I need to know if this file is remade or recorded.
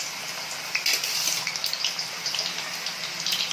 recorded